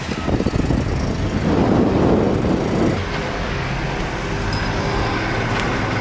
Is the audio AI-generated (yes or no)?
no